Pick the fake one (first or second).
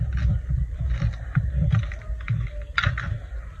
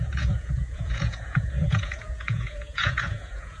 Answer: second